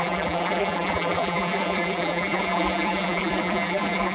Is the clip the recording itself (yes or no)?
no